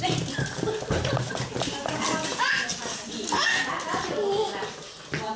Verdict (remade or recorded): recorded